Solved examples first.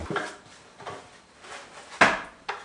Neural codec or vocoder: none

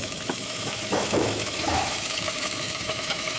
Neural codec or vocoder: autoencoder, DAC-VAE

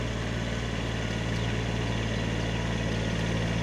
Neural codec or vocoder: none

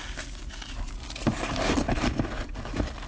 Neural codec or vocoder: none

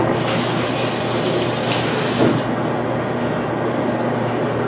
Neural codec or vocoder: none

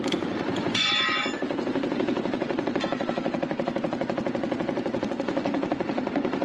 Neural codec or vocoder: vocoder, Vocos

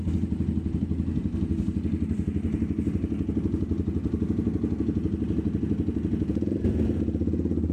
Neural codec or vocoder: none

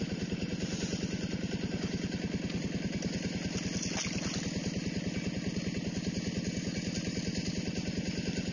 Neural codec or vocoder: none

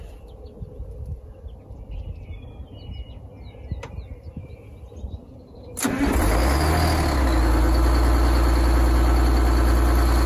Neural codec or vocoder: none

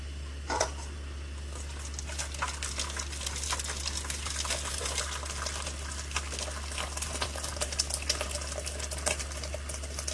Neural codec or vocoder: none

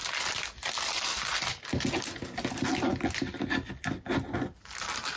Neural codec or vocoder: none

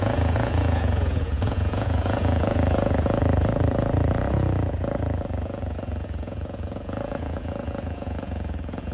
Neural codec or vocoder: vocoder, Vocos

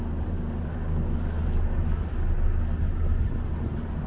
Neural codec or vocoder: none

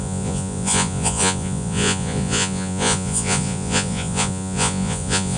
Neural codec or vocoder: vocoder, Vocos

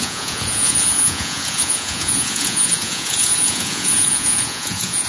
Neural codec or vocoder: vocoder, Vocos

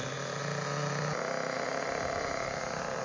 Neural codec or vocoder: none